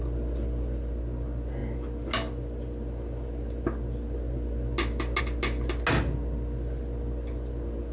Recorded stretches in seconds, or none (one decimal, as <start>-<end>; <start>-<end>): 0.0-7.9